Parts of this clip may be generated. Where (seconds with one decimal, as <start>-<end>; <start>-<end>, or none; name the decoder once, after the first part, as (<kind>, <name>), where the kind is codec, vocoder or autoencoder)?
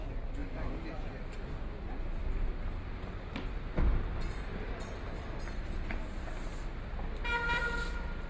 none